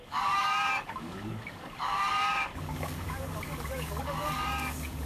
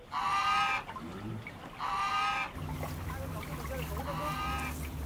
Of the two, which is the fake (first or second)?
first